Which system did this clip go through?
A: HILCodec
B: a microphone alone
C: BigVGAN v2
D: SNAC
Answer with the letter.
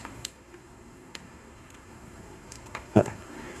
D